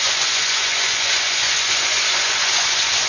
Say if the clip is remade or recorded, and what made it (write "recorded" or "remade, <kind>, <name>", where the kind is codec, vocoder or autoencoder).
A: remade, vocoder, Vocos